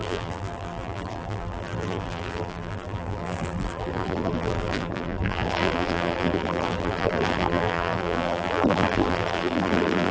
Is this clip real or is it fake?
fake